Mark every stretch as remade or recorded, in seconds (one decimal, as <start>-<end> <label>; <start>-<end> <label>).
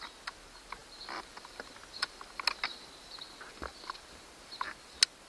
0.0-5.3 recorded